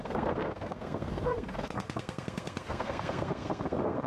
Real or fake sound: fake